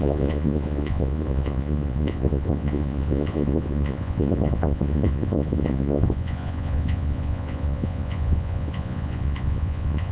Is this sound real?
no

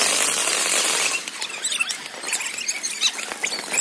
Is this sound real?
yes